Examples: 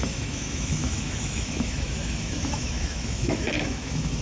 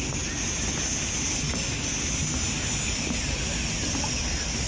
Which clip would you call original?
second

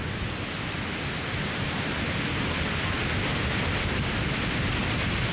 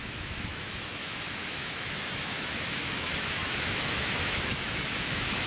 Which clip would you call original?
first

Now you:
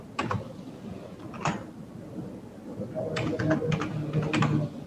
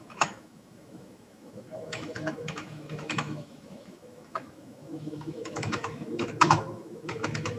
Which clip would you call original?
first